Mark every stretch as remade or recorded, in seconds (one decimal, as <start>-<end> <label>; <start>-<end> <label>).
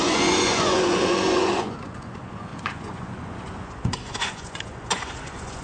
0.0-5.6 remade